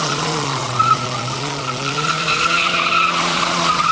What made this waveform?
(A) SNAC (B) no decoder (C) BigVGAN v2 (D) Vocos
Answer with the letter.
D